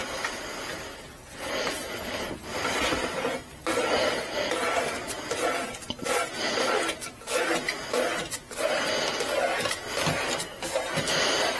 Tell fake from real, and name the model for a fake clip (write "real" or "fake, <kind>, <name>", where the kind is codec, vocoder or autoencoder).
real